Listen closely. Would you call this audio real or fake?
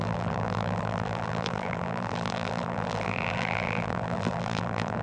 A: fake